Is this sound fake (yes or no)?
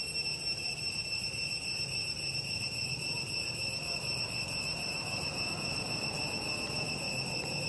yes